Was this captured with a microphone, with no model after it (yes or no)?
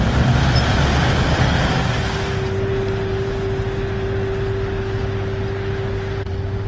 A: yes